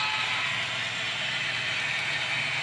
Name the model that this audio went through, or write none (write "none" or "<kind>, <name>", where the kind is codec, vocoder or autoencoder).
none